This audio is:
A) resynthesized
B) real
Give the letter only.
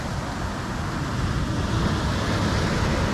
B